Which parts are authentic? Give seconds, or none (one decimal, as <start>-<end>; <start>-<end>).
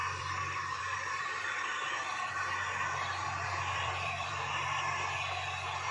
2.3-3.5; 4.5-5.9